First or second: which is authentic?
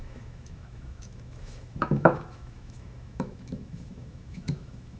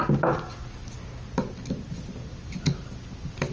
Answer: second